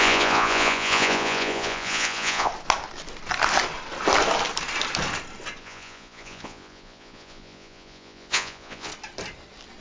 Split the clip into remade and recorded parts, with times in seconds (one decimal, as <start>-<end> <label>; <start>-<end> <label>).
0.0-2.5 remade; 2.5-5.6 recorded; 5.6-8.9 remade; 8.9-9.8 recorded